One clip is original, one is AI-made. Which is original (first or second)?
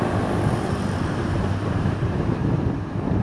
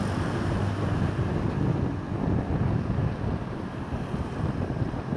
second